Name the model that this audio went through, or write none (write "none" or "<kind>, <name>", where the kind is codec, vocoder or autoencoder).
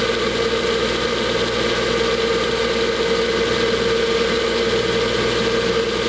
none